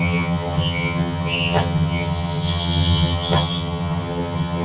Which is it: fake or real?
fake